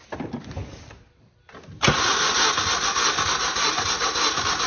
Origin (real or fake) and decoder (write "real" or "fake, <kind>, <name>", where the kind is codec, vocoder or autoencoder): real